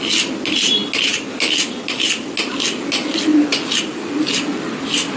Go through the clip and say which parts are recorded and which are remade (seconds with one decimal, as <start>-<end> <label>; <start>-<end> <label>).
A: 0.0-1.1 recorded; 1.1-1.6 remade; 1.6-5.2 recorded